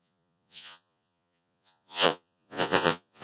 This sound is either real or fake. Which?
fake